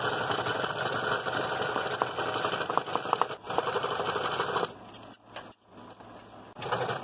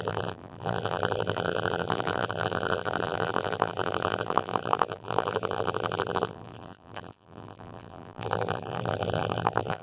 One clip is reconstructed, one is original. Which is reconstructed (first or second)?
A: second